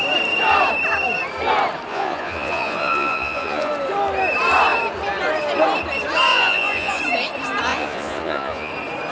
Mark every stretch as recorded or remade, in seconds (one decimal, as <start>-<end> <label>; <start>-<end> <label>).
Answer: 0.0-1.9 recorded; 1.9-3.7 remade; 3.7-6.3 recorded; 6.3-7.0 remade; 7.0-7.7 recorded; 7.7-8.7 remade; 8.7-9.1 recorded